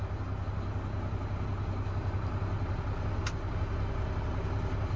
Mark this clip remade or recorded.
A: recorded